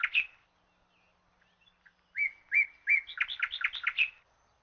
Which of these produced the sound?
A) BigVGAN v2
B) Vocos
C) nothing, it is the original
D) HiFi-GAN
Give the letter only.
C